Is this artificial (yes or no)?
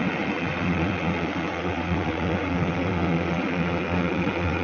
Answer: yes